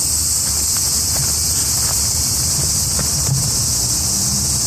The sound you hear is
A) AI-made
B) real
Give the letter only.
B